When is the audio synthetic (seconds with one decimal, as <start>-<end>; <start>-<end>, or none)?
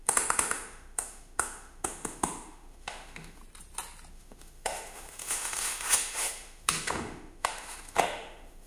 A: 0.0-3.4; 4.1-8.7